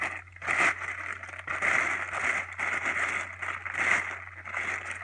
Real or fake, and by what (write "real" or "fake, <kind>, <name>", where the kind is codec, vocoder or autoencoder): real